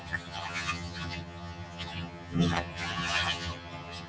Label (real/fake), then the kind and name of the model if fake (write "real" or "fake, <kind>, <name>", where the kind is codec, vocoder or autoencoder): fake, vocoder, HiFi-GAN